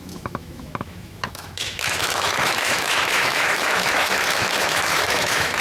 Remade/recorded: remade